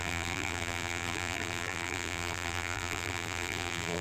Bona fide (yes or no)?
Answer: no